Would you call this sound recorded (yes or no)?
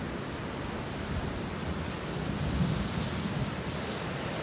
yes